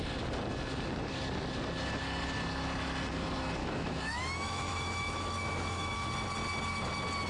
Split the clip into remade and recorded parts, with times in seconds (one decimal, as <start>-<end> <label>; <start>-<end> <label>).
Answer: 0.0-3.6 recorded; 3.6-6.1 remade; 6.1-7.3 recorded